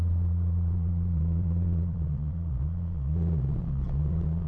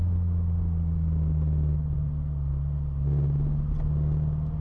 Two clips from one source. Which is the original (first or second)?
second